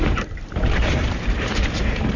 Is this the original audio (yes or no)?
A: no